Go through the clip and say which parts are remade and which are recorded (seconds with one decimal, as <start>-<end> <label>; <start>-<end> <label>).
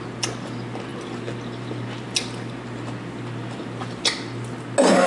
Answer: 0.0-5.1 recorded